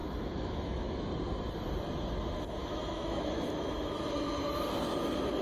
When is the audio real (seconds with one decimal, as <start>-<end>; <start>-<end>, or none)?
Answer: 1.0-2.6; 4.0-5.4

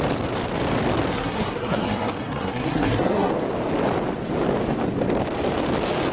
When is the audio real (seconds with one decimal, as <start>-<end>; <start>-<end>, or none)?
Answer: 0.0-1.1; 3.3-6.1